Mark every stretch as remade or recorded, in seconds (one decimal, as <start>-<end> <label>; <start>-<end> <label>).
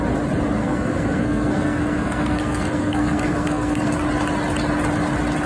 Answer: 0.0-0.6 recorded; 0.6-3.9 remade; 3.9-5.5 recorded